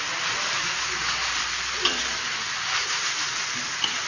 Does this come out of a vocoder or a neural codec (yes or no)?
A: no